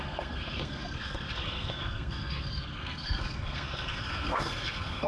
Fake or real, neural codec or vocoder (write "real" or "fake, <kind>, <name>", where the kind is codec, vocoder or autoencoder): fake, codec, SNAC